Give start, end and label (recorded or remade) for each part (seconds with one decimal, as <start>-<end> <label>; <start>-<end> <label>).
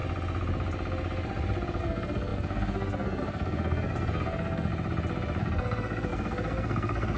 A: 0.0-1.8 recorded; 1.8-4.7 remade; 4.7-5.4 recorded; 5.4-7.2 remade